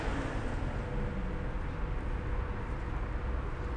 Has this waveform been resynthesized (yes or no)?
no